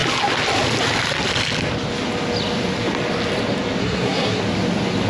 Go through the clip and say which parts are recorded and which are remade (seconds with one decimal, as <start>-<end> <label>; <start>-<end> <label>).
0.0-3.8 recorded; 3.8-4.4 remade; 4.4-5.1 recorded